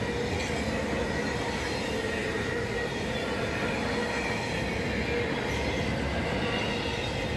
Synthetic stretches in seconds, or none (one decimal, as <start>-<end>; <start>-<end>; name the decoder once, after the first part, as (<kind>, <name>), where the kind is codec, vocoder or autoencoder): 2.2-3.9 (vocoder, BigVGAN v2)